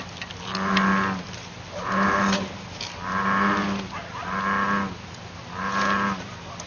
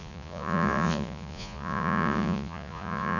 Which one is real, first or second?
first